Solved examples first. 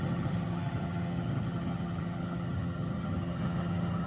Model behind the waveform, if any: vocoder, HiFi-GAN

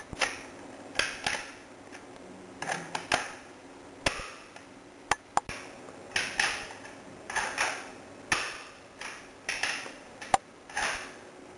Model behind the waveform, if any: none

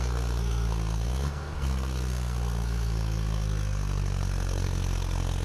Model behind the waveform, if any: codec, SNAC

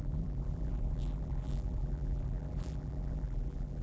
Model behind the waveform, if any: vocoder, BigVGAN v2